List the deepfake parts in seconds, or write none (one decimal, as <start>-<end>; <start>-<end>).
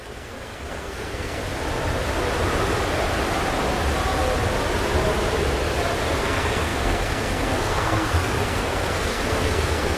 0.0-1.4; 6.2-10.0